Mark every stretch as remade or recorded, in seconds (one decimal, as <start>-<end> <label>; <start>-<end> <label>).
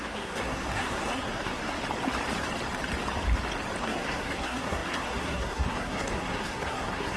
0.0-1.8 remade; 1.8-3.8 recorded; 3.8-7.2 remade